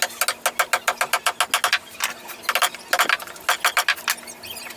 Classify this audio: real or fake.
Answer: real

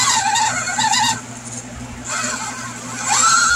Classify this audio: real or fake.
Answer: real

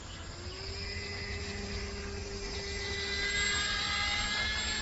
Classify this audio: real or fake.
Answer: real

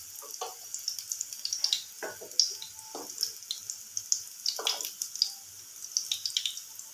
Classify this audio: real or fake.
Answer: real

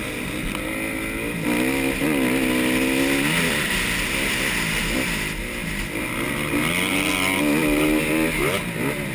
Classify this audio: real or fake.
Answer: real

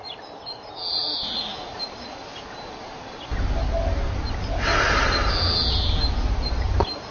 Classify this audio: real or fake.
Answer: real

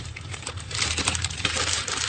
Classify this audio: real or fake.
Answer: fake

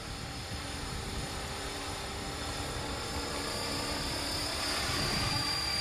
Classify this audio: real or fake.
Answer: fake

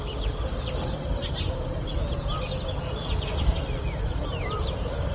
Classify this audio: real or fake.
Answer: fake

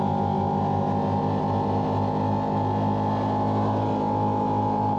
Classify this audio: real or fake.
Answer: real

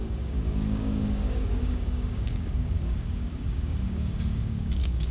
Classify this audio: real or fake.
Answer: fake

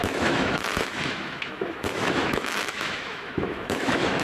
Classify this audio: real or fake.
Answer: fake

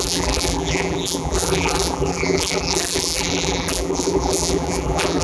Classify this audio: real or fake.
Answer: fake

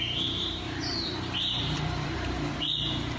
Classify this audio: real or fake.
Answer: fake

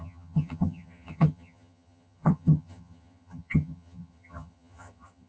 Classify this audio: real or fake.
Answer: fake